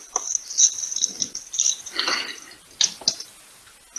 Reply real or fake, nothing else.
real